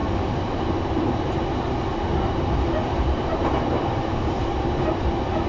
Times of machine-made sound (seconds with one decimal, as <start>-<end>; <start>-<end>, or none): 0.0-1.4; 2.8-4.9